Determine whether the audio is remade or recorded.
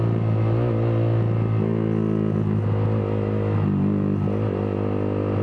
recorded